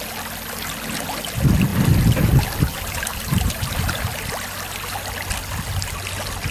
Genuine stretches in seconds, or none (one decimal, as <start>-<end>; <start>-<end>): 0.0-2.7; 3.9-6.5